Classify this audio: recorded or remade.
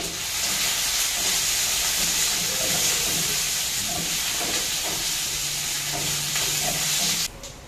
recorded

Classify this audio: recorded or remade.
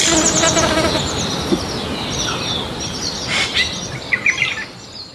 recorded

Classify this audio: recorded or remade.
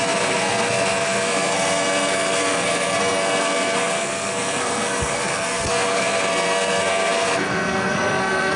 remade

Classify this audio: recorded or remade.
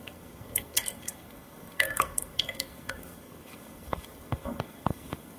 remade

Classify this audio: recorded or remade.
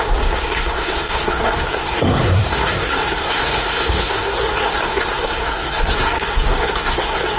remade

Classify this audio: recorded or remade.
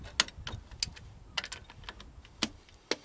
recorded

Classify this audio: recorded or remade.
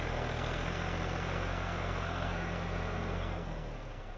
remade